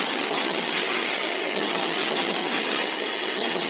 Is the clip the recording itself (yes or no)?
no